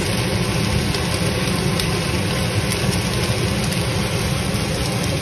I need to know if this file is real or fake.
real